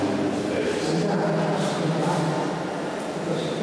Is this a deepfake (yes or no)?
no